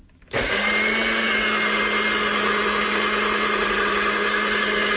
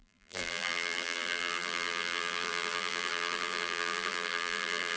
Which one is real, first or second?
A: first